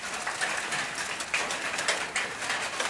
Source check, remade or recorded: recorded